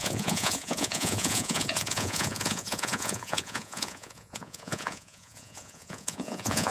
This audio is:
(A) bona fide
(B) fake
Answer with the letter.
B